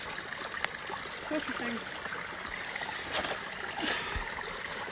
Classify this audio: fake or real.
real